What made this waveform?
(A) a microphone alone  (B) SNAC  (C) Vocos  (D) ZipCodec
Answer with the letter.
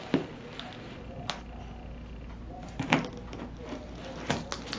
A